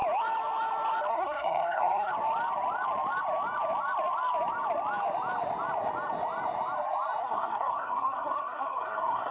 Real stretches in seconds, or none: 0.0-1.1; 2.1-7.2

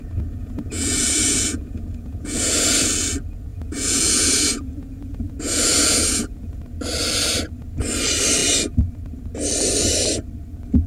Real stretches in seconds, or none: 0.0-0.4; 2.9-3.5; 6.6-10.9

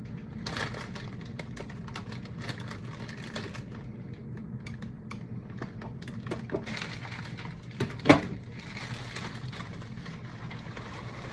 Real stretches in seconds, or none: 0.0-11.3

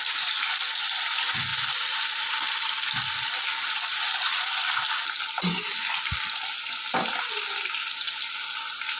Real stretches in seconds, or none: 0.0-9.0

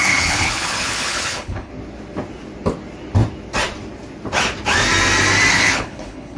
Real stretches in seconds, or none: 1.7-5.5

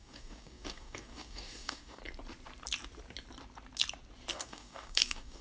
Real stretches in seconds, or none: 2.0-4.3

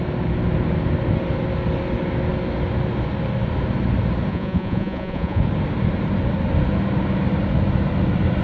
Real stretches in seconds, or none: 0.0-4.3; 5.4-8.4

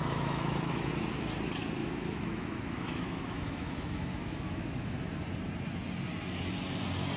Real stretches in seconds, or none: 0.9-1.8; 5.0-7.2